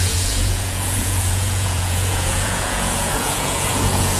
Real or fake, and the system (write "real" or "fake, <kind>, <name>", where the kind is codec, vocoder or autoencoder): fake, vocoder, Vocos